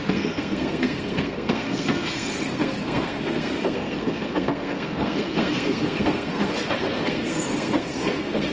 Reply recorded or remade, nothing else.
remade